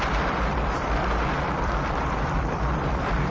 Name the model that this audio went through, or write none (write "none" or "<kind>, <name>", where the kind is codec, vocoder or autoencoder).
vocoder, BigVGAN v2